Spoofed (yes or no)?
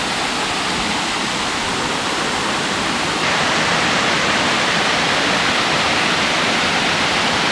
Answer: no